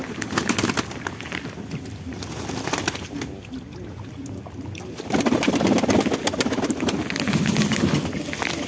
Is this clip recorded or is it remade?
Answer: recorded